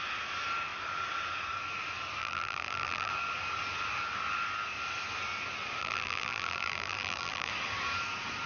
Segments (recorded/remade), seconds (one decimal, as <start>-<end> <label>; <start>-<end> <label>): 0.0-2.2 recorded; 2.2-3.1 remade; 3.1-5.8 recorded; 5.8-7.5 remade; 7.5-8.5 recorded